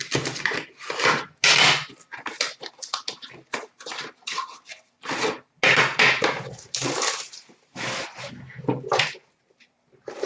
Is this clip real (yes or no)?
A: yes